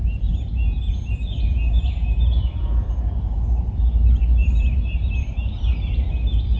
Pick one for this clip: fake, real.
fake